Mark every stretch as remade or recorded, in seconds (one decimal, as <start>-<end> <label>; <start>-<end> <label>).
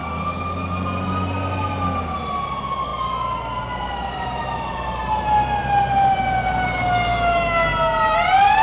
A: 0.0-8.6 recorded